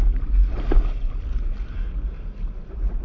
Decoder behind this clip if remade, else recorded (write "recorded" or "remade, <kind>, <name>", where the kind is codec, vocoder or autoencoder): recorded